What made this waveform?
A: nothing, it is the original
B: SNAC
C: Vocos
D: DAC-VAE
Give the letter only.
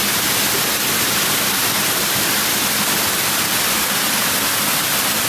A